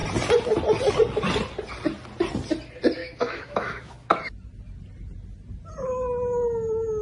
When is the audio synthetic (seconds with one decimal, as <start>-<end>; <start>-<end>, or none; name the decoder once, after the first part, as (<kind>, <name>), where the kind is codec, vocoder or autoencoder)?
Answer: 3.0-4.2 (autoencoder, DAC-VAE)